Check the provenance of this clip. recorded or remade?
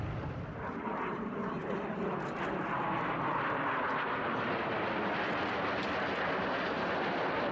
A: remade